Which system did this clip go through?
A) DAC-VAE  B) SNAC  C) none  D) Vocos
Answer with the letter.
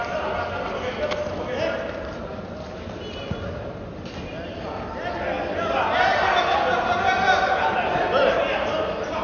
C